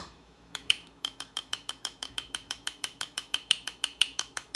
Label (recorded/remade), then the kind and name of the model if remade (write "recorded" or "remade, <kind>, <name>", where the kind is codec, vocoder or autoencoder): remade, autoencoder, DAC-VAE